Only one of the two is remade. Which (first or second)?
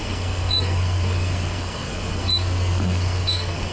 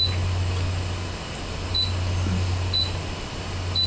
first